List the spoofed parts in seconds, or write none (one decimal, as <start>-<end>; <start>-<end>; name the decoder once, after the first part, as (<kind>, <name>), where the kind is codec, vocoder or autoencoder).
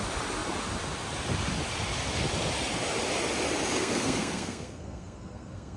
3.8-5.8 (codec, SNAC)